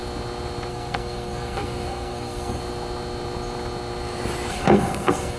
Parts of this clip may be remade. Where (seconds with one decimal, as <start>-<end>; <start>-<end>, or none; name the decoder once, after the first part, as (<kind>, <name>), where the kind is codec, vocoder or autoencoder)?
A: 0.7-2.6 (codec, SNAC); 4.5-5.4